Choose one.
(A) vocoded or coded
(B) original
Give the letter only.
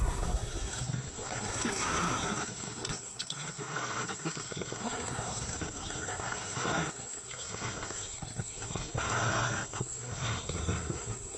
A